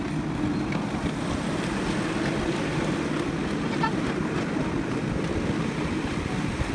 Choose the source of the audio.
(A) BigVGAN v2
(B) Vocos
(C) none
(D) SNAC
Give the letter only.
C